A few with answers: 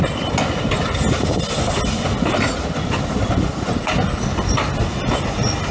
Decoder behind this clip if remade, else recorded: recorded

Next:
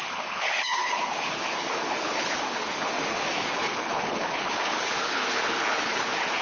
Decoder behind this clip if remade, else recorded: remade, codec, HILCodec